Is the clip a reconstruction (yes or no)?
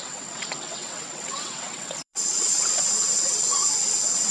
yes